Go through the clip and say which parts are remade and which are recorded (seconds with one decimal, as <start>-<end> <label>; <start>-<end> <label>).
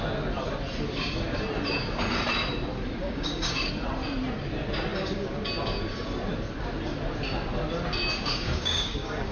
0.0-3.0 recorded; 3.0-3.7 remade; 3.7-8.3 recorded; 8.3-9.3 remade